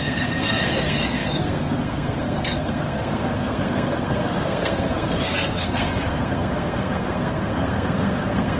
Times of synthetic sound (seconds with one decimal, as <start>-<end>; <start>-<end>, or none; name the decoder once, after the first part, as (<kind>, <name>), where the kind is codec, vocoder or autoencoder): 0.0-8.6 (codec, SNAC)